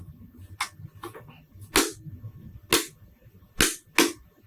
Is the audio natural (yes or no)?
yes